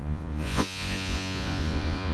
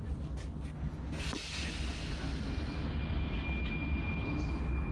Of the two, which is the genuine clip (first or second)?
second